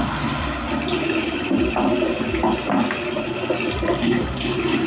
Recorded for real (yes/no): yes